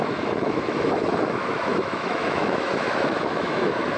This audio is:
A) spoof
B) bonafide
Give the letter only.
A